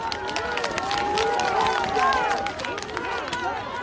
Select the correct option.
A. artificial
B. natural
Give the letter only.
B